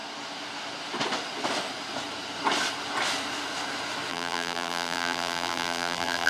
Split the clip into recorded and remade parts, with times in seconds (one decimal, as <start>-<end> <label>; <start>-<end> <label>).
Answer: 0.0-4.1 recorded; 4.1-6.3 remade